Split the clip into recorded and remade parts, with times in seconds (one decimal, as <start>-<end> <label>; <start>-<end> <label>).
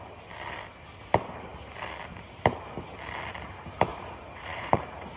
0.0-3.9 recorded; 3.9-5.2 remade